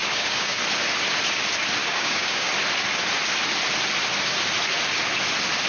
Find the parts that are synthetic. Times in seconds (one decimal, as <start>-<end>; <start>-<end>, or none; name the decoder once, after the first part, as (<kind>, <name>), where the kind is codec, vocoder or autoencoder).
0.0-0.6 (codec, DAC); 1.8-2.5